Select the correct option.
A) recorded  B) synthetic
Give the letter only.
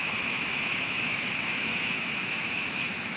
B